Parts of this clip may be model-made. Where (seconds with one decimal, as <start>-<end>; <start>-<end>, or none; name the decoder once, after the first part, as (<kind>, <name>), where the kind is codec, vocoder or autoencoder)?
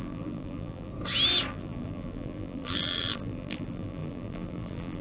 0.0-0.9 (vocoder, BigVGAN v2); 1.5-5.0